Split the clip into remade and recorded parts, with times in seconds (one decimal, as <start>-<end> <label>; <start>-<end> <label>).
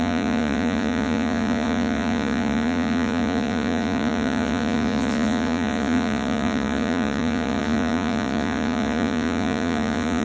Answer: 0.0-10.2 remade